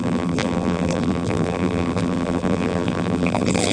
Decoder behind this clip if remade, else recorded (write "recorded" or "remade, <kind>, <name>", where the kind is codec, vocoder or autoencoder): remade, vocoder, BigVGAN v2